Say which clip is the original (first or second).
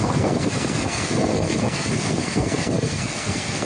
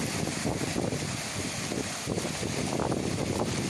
second